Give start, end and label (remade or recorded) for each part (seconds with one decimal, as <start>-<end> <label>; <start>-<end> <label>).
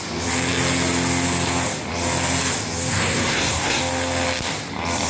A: 0.0-2.9 recorded; 2.9-3.8 remade; 3.8-5.1 recorded